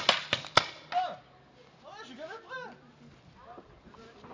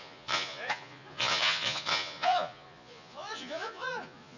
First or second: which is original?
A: first